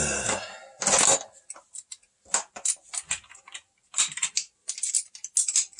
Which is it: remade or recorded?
recorded